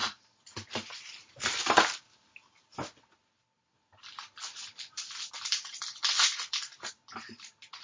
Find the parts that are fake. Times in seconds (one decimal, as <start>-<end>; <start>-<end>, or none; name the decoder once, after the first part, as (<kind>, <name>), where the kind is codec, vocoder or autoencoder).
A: 0.0-6.0 (vocoder, BigVGAN v2); 6.9-7.8